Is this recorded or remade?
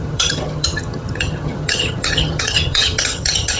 remade